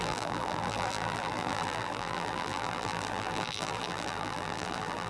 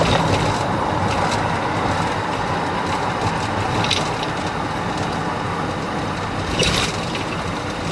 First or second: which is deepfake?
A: first